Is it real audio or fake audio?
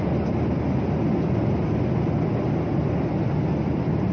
real